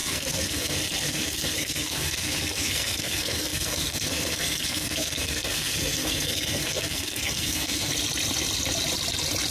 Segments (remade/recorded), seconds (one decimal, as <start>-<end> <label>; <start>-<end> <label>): 0.0-7.9 remade; 7.9-9.5 recorded